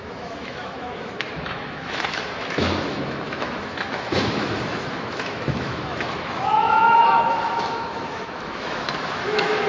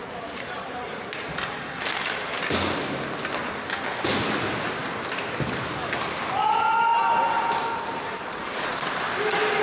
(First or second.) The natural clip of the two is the second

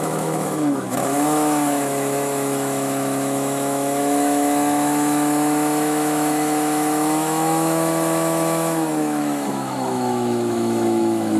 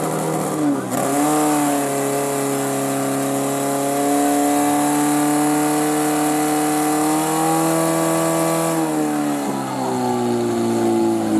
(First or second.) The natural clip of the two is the second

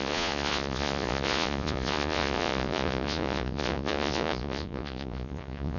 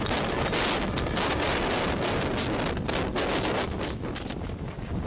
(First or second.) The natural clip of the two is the second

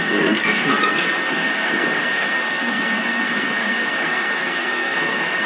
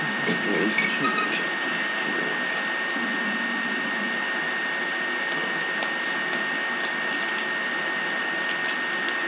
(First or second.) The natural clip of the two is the second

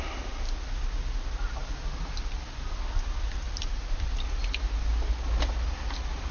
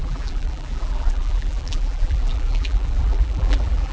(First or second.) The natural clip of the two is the first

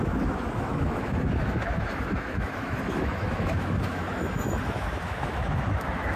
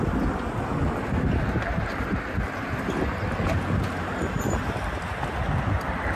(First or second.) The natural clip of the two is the second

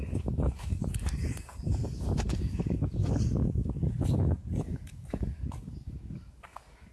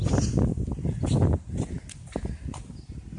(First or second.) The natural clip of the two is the second